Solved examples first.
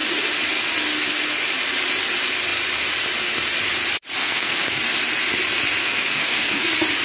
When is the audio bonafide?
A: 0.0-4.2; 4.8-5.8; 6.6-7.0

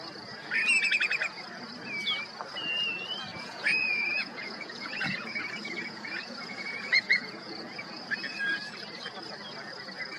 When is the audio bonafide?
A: 0.0-3.3; 8.0-10.2

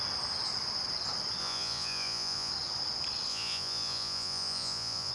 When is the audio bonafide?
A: 0.0-1.4; 2.5-3.3

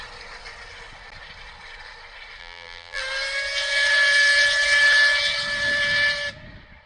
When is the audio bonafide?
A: 0.0-2.4; 3.0-6.9

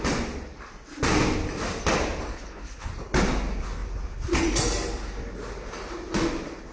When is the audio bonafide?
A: 0.0-2.3; 2.9-6.7